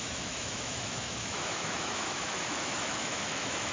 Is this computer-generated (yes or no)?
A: yes